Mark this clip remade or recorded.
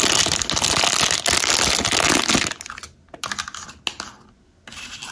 recorded